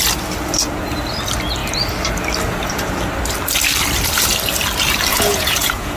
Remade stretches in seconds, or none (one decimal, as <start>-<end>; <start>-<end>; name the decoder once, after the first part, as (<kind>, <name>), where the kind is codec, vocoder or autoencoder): 5.1-6.0 (vocoder, Vocos)